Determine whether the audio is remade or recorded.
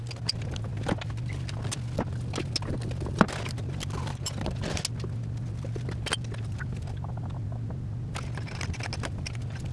recorded